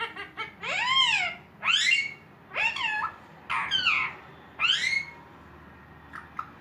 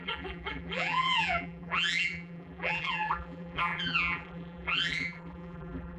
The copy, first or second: second